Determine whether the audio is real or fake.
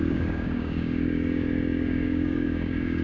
fake